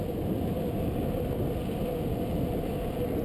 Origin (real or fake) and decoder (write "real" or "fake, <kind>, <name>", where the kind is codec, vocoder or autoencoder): real